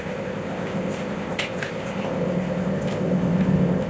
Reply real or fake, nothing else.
fake